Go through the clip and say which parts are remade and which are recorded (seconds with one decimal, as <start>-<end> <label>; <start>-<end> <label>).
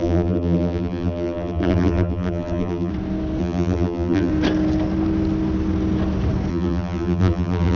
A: 0.0-2.9 remade; 2.9-3.4 recorded; 3.4-4.3 remade; 4.3-6.5 recorded; 6.5-7.8 remade